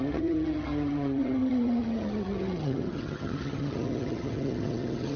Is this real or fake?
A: fake